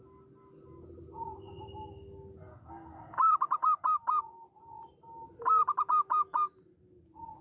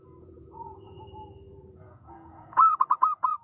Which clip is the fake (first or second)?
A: second